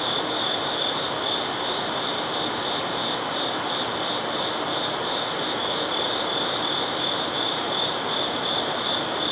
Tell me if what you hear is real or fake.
real